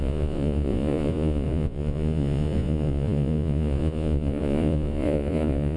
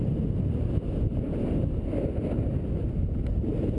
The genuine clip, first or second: second